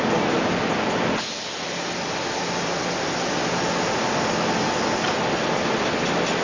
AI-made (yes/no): no